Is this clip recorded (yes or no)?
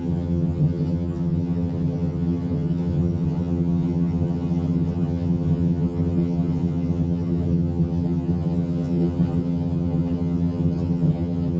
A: no